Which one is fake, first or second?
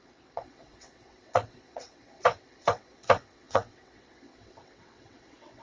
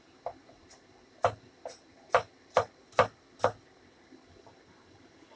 first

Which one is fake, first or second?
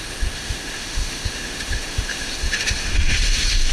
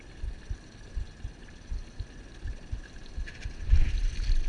first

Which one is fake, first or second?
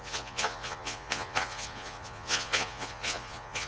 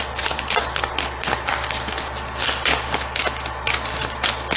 first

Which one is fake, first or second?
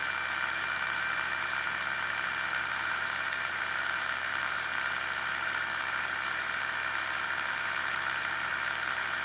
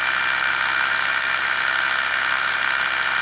first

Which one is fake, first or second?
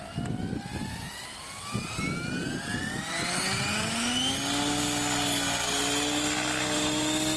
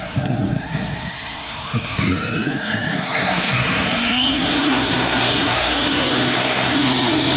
second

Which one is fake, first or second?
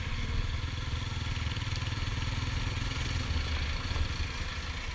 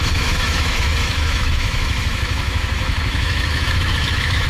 second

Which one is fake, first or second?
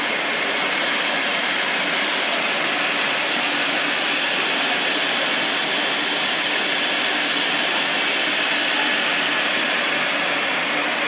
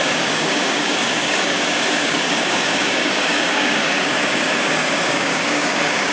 second